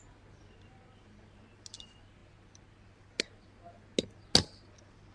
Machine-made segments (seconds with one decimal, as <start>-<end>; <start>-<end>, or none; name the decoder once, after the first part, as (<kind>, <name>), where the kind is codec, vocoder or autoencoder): none